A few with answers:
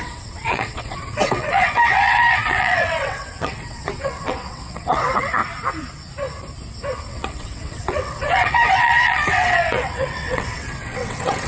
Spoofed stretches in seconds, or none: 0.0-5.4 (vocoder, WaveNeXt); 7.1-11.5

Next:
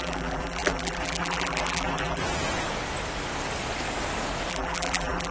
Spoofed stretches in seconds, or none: 0.0-2.2 (vocoder, BigVGAN v2); 4.5-5.3

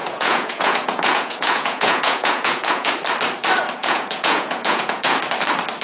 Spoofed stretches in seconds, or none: 0.0-2.9 (vocoder, Vocos); 3.8-5.2

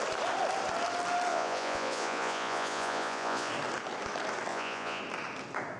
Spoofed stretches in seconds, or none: 1.3-3.5 (vocoder, Vocos); 4.5-5.0

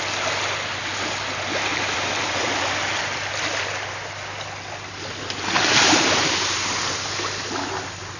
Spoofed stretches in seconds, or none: 1.7-3.3 (vocoder, BigVGAN v2)

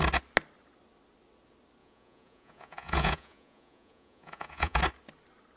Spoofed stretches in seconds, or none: 1.8-4.8 (vocoder, Vocos)

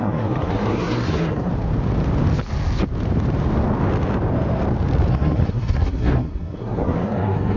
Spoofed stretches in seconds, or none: 0.0-1.5 (codec, SNAC); 5.1-7.6

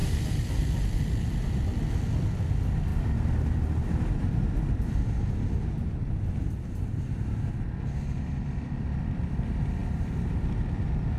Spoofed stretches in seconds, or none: none